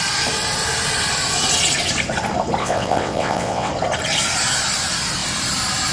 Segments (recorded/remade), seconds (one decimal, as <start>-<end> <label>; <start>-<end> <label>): 0.0-2.6 recorded; 2.6-3.7 remade; 3.7-5.9 recorded